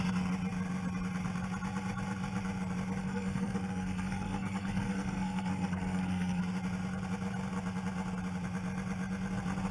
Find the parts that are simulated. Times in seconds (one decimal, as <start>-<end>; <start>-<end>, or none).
3.0-6.4